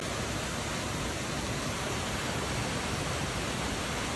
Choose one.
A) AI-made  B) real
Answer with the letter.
B